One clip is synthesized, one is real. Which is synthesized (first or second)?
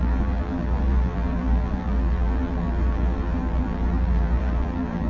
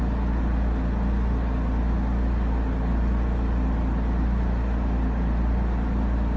first